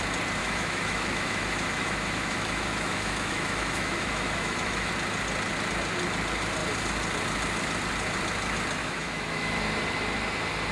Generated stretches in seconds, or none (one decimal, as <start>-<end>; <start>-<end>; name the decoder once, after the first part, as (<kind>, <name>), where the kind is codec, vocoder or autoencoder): 0.4-4.9 (autoencoder, DAC-VAE); 8.8-9.6